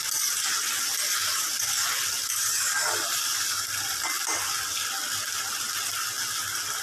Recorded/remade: recorded